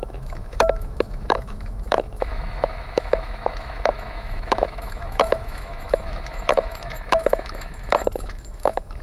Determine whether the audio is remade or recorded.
remade